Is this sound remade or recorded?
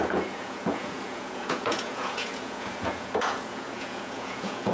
remade